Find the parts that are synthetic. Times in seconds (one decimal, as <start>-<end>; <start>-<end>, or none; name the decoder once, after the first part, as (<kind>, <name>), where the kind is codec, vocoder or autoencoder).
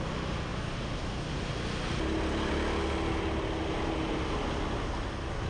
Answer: none